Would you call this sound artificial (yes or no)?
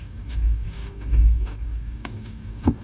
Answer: yes